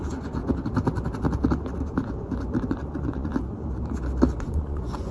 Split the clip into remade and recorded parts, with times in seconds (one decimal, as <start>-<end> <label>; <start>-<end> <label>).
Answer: 0.0-0.4 remade; 0.4-2.7 recorded; 2.7-3.3 remade; 3.3-4.4 recorded; 4.4-5.1 remade